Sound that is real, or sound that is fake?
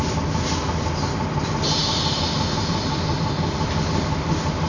real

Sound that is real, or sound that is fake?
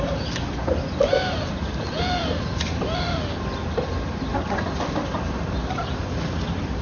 fake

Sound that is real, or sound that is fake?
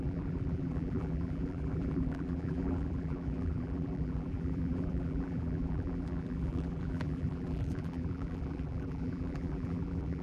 fake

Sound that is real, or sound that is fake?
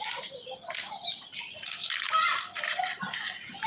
real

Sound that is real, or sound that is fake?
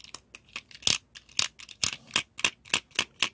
real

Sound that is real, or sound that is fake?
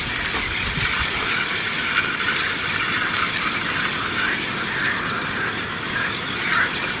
fake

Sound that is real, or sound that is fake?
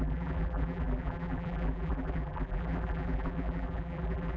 fake